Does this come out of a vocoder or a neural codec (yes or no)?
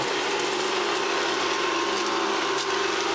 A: no